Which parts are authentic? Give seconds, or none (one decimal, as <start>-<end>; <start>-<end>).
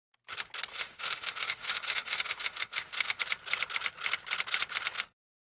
0.0-0.7; 3.2-5.4